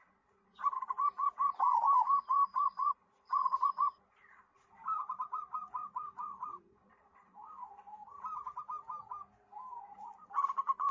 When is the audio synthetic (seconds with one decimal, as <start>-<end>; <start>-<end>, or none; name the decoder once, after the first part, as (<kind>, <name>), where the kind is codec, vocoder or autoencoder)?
0.0-7.9 (vocoder, Vocos); 9.7-10.9